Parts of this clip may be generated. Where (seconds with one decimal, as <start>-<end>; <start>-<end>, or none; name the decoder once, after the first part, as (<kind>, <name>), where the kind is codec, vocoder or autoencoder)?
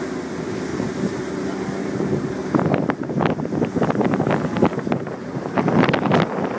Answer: 0.7-1.3 (vocoder, BigVGAN v2); 1.8-2.3; 5.0-5.6